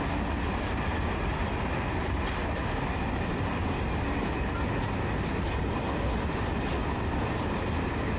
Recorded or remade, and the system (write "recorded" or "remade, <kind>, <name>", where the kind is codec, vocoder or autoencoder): recorded